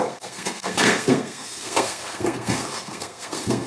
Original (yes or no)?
no